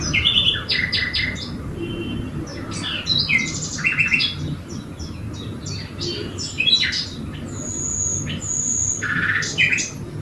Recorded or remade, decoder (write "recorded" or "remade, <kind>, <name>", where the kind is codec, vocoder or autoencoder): recorded